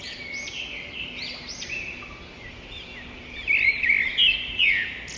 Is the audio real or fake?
real